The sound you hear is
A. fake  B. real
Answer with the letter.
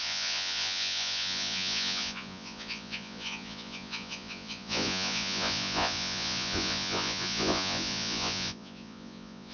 A